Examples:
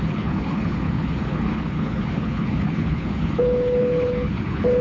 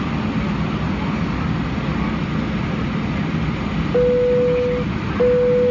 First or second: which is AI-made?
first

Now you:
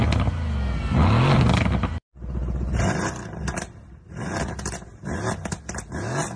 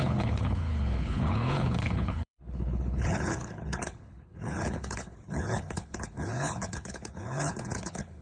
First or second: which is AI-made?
second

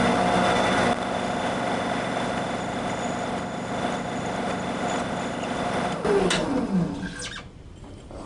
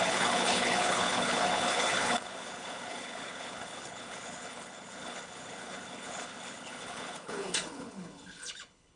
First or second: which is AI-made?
second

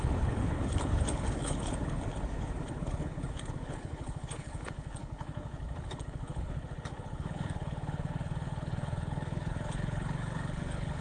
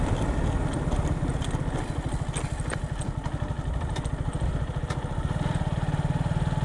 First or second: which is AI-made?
first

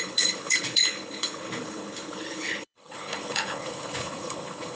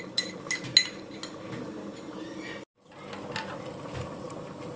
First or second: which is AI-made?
first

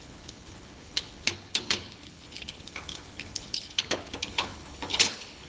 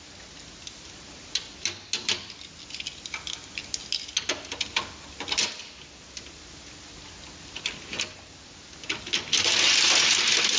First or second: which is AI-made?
first